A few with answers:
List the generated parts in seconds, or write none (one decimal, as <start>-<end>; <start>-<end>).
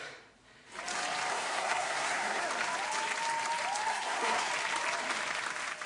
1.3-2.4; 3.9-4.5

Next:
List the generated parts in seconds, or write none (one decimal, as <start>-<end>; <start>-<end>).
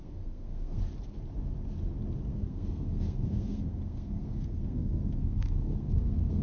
0.0-0.8; 2.3-6.4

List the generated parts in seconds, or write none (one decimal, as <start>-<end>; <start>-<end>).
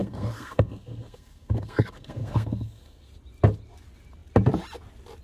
0.0-3.1